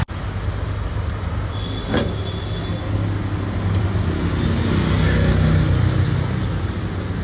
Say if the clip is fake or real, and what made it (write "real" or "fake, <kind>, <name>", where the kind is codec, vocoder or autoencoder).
real